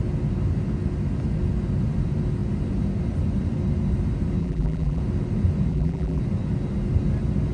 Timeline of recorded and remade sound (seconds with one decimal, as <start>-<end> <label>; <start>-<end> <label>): 0.0-4.4 recorded; 4.4-5.0 remade; 5.0-5.7 recorded; 5.7-6.2 remade; 6.2-7.5 recorded